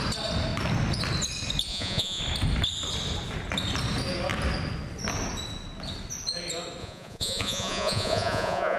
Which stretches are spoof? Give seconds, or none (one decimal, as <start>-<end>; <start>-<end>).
1.7-2.2; 6.8-8.8

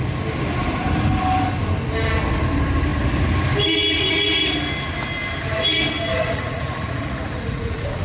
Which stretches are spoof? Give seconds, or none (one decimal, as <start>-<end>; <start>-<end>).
6.1-8.0

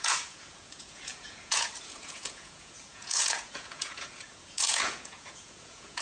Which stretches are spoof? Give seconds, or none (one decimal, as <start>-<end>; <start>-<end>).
0.0-6.0

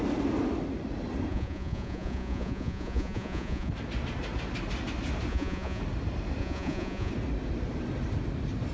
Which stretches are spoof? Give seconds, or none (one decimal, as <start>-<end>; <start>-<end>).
1.3-3.7; 5.3-5.8; 6.4-7.1

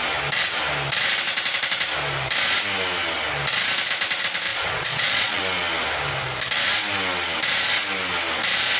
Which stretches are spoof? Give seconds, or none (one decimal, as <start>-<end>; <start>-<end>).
4.5-5.4

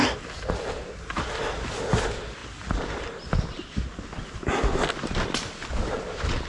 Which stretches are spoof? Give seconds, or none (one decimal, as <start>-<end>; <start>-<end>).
none